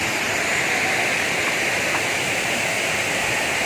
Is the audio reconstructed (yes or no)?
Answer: no